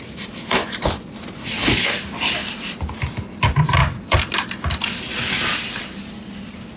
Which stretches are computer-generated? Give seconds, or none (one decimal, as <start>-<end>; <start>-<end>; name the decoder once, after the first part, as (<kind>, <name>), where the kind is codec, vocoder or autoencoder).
none